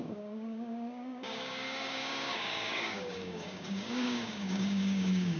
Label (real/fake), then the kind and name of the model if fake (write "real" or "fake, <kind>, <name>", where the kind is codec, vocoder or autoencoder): fake, codec, DAC